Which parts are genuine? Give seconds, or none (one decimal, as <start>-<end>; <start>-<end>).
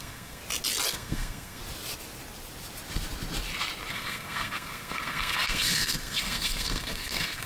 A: 0.4-0.9; 1.6-3.9